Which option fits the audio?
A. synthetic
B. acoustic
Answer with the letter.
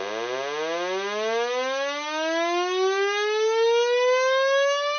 B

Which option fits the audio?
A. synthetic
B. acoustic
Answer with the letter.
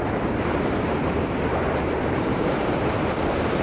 A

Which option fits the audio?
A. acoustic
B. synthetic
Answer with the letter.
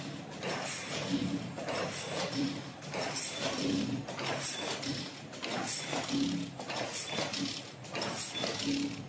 A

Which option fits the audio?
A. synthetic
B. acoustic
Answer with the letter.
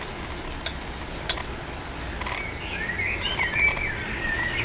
B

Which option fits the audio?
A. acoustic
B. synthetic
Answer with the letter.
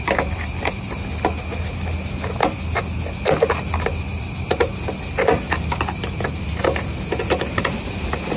A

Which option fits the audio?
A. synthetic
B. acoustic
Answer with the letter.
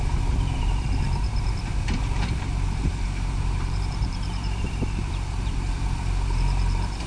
A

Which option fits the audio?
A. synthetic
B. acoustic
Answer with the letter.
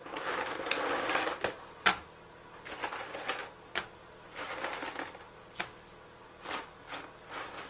B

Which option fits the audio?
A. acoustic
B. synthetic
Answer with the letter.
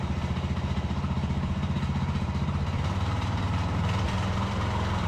B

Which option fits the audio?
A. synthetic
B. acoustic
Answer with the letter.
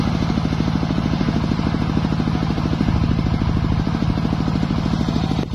B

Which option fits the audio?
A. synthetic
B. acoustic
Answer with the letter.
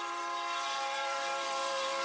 A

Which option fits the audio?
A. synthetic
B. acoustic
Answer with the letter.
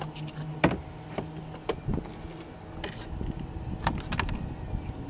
B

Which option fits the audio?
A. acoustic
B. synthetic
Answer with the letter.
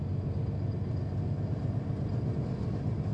B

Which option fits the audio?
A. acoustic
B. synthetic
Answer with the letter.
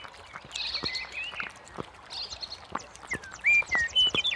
A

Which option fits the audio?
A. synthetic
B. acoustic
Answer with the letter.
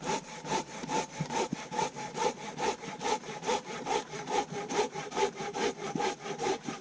A